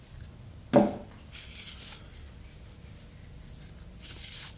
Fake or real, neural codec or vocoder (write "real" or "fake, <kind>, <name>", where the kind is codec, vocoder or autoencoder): real